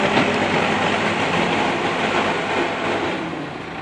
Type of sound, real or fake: real